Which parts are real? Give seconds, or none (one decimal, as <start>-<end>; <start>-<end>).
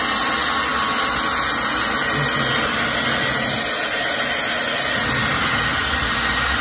0.0-6.6